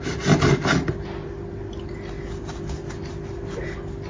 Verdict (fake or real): real